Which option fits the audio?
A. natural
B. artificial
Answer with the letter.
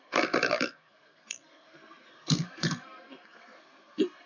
B